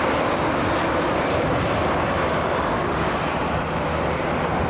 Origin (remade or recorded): recorded